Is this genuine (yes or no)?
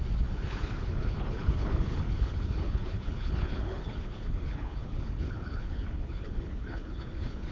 no